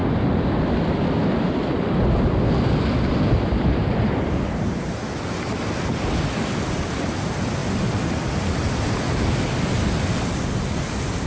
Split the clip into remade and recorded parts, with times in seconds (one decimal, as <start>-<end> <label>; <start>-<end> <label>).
0.0-3.8 recorded; 3.8-5.0 remade; 5.0-11.3 recorded